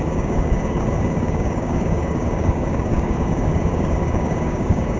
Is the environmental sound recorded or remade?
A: remade